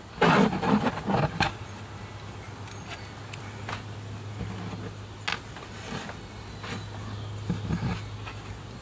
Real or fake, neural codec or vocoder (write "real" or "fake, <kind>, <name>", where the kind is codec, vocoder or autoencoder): real